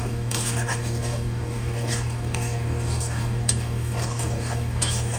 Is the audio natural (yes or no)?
no